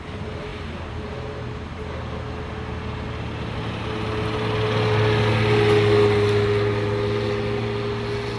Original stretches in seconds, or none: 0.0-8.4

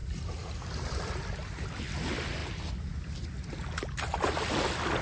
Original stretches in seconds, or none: 1.1-5.0